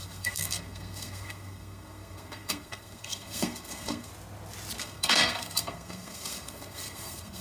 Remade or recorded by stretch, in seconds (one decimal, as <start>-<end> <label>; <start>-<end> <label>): 0.0-4.1 remade; 4.1-4.8 recorded; 4.8-7.4 remade